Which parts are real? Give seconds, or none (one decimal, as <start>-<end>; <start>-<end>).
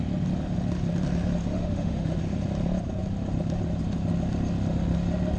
0.0-1.5; 2.2-5.4